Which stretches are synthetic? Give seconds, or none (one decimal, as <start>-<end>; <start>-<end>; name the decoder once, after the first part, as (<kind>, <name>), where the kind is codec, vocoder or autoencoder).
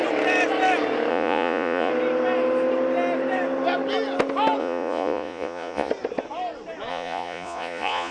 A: 1.1-1.9 (vocoder, Vocos); 4.6-5.9; 6.9-8.1